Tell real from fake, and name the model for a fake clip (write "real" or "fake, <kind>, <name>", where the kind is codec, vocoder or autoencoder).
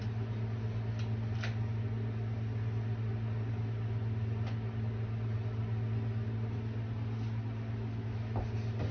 real